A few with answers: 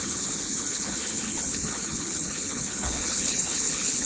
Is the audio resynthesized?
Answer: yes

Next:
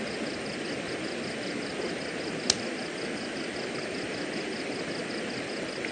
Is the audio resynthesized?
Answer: no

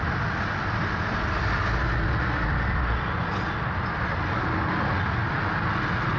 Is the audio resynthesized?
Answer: no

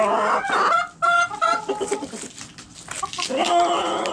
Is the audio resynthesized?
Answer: no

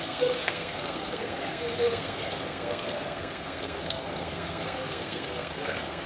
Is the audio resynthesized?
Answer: yes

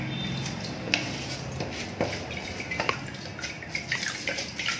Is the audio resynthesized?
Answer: no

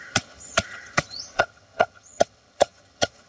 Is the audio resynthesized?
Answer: yes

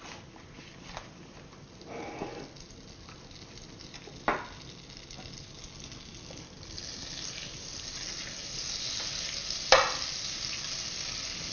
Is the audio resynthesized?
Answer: no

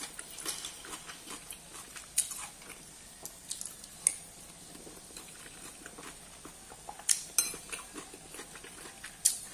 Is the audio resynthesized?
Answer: no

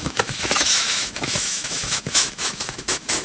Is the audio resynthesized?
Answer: yes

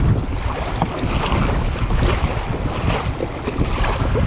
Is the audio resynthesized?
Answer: no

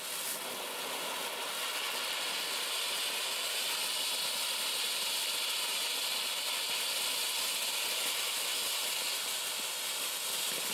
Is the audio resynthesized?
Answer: no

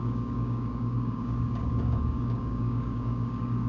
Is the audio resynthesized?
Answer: yes